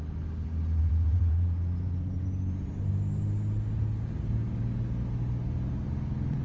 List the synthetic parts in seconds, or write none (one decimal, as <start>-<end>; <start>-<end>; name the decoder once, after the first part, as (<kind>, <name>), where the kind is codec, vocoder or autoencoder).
0.8-2.7 (vocoder, Vocos)